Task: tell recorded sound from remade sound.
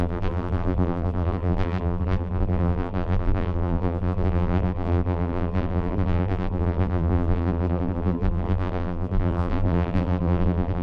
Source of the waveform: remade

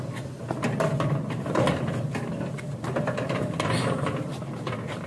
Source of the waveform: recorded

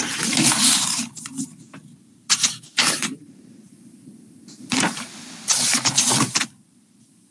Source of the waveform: remade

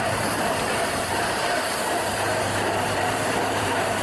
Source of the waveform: remade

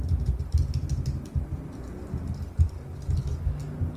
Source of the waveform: recorded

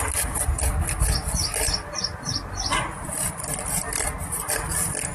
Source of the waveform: recorded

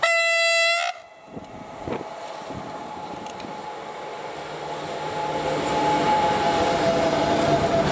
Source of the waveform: recorded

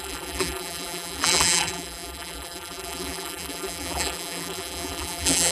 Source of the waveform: remade